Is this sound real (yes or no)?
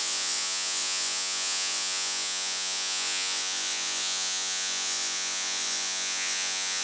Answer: no